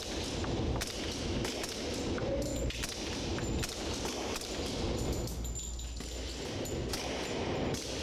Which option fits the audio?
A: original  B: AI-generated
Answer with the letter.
A